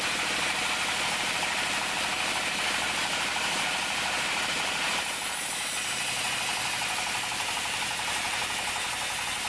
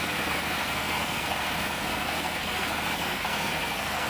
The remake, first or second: second